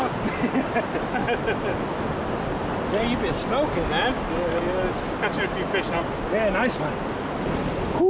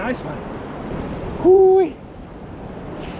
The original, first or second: first